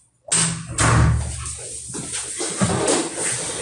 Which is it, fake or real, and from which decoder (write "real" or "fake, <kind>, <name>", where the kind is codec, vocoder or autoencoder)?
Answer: real